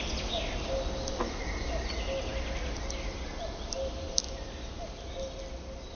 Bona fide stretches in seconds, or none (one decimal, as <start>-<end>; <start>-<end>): 0.0-5.9